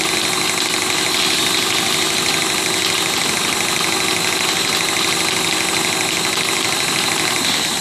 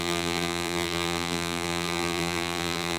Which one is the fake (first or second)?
second